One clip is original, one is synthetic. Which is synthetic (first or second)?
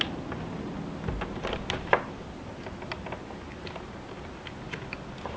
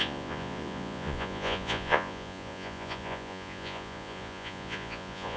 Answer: second